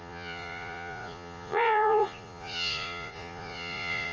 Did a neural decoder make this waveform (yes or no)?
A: yes